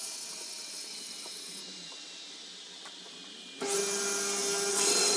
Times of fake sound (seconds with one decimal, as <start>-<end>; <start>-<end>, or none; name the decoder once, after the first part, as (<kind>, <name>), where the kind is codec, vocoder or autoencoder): 0.0-1.6 (vocoder, WaveNeXt); 4.7-5.2